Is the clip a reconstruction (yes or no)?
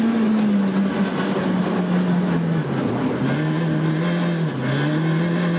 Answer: no